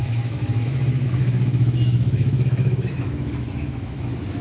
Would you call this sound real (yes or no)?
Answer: no